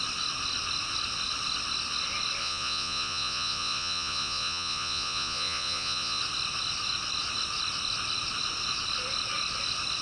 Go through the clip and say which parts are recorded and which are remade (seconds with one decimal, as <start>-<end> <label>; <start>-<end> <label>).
0.0-2.4 recorded; 2.4-6.2 remade; 6.2-10.0 recorded